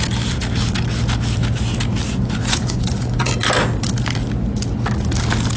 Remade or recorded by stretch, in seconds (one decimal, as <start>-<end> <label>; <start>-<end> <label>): 0.0-2.1 recorded; 2.1-3.3 remade; 3.3-5.6 recorded